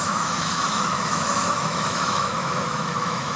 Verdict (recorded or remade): remade